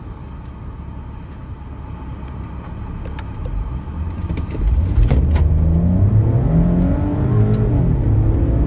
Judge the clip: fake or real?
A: real